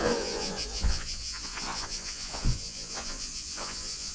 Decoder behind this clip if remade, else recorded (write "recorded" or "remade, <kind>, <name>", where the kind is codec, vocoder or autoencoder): remade, vocoder, Vocos